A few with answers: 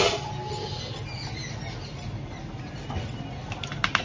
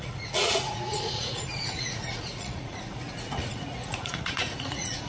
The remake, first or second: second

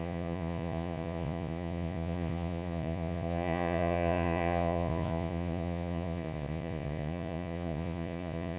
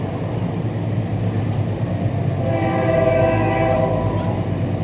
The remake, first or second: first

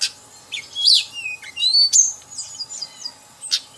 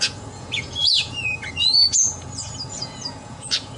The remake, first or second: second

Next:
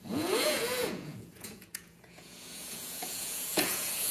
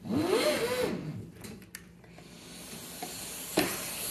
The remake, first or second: first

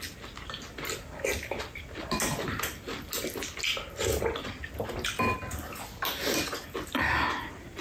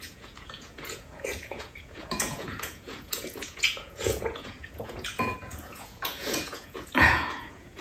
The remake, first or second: second